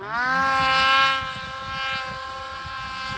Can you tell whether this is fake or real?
real